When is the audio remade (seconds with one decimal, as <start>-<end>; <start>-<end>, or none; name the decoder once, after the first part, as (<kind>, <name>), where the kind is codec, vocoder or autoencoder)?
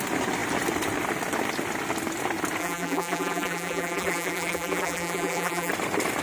2.6-5.7 (vocoder, BigVGAN v2)